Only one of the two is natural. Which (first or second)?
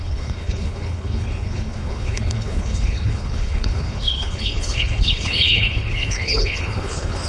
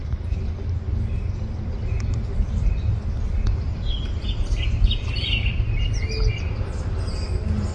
second